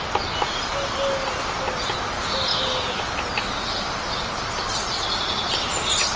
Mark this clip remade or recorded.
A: recorded